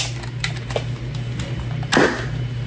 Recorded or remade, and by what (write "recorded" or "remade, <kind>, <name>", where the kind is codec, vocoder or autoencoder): recorded